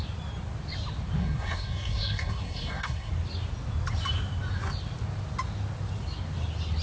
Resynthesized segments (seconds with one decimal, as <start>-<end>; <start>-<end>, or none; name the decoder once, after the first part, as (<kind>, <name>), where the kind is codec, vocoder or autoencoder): 1.2-3.1 (codec, SNAC)